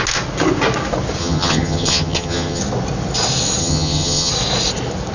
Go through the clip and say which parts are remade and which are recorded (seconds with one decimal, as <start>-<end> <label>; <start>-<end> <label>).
0.0-1.2 recorded; 1.2-2.6 remade; 2.6-3.6 recorded; 3.6-4.3 remade; 4.3-5.1 recorded